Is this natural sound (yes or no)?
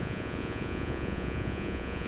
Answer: no